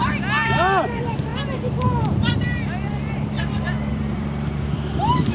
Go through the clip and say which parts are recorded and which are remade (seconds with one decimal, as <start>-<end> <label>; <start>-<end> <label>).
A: 0.0-5.3 remade